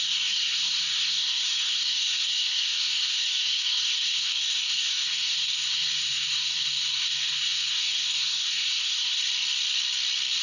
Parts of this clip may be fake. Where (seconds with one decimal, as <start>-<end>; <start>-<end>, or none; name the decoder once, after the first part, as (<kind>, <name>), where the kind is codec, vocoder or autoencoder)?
0.0-9.2 (codec, SNAC)